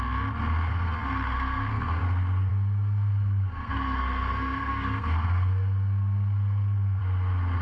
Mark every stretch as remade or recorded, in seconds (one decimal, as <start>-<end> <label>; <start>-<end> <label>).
0.0-0.7 recorded; 0.7-2.0 remade; 2.0-2.5 recorded; 2.5-7.0 remade; 7.0-7.6 recorded